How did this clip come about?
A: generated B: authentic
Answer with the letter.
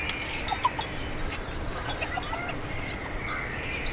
B